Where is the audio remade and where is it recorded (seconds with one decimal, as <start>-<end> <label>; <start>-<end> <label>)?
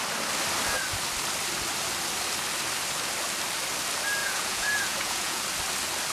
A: 0.0-4.2 recorded; 4.2-5.4 remade; 5.4-6.1 recorded